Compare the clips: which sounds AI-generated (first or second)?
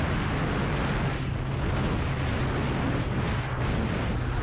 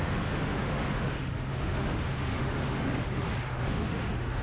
second